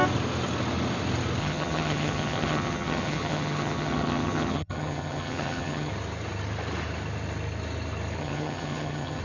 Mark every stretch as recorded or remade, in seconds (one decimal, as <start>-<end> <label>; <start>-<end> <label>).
0.0-1.4 recorded; 1.4-5.9 remade; 5.9-8.2 recorded; 8.2-9.2 remade

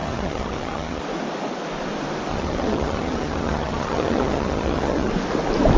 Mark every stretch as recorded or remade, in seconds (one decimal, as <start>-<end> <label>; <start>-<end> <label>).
0.0-1.0 remade; 1.0-2.3 recorded; 2.3-5.1 remade; 5.1-5.8 recorded

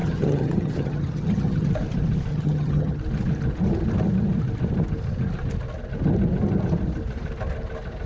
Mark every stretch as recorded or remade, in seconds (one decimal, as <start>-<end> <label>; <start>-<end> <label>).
0.0-1.7 remade; 1.7-2.3 recorded; 2.3-3.0 remade; 3.0-8.1 recorded

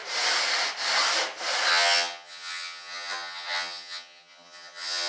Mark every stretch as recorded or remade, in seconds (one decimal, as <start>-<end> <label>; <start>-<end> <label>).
0.0-1.7 recorded; 1.7-5.1 remade

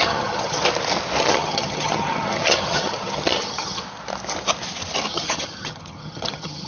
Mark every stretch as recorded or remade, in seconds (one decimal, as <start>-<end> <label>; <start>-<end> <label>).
0.0-0.6 remade; 0.6-1.2 recorded; 1.2-3.8 remade; 3.8-5.1 recorded; 5.1-6.7 remade

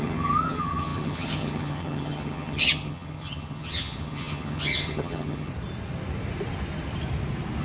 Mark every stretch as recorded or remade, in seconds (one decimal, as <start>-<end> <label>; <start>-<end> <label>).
0.0-5.5 remade; 5.5-7.6 recorded

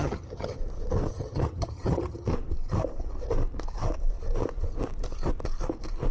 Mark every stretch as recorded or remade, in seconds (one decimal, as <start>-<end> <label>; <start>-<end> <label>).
0.0-0.6 remade; 0.6-1.1 recorded; 1.1-2.3 remade; 2.3-6.1 recorded

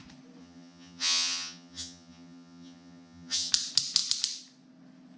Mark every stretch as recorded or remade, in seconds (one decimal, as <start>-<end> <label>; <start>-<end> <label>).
0.0-0.4 recorded; 0.4-3.5 remade; 3.5-5.2 recorded